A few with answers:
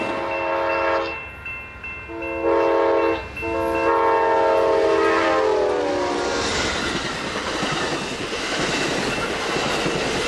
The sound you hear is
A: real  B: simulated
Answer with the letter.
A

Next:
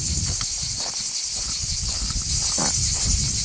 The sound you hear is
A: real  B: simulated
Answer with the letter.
A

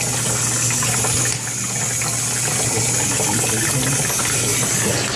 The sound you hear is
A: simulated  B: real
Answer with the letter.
B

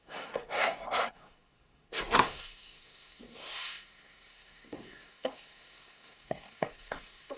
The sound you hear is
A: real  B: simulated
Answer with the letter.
B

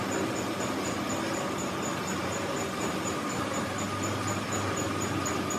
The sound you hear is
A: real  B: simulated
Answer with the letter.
A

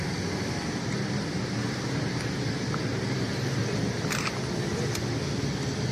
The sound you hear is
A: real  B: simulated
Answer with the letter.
A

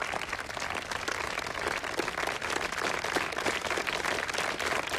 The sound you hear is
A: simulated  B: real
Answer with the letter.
B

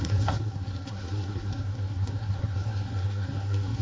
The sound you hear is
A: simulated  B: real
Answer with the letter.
A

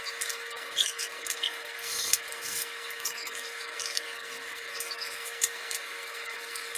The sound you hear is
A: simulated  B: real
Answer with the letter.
A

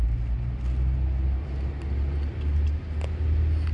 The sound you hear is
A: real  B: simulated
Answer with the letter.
A